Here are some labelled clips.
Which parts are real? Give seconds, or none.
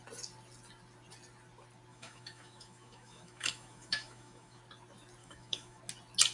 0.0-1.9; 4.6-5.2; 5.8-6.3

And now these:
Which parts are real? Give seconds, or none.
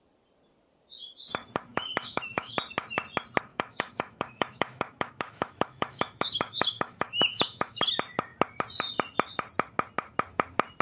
0.0-1.7; 2.5-3.5; 7.9-10.8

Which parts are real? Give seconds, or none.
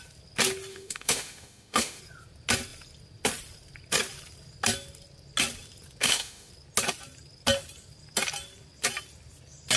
0.0-0.7; 2.0-6.0; 6.5-9.8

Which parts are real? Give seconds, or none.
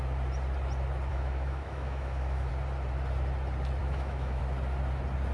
0.0-1.1; 2.5-3.8; 4.4-5.3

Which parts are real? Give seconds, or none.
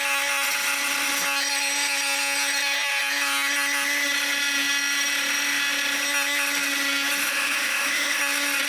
0.0-7.2; 8.2-8.7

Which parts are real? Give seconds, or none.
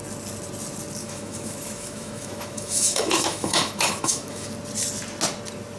0.0-1.0; 4.5-5.8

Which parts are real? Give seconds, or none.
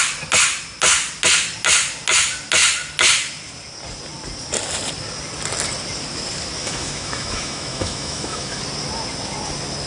0.0-6.6; 8.6-9.9